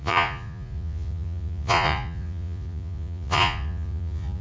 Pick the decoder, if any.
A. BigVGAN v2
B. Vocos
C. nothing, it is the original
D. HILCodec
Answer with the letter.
B